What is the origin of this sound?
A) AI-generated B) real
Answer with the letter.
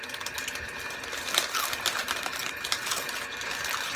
B